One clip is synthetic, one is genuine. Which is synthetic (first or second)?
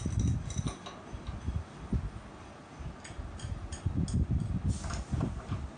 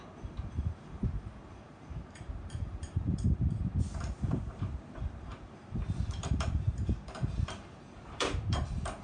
second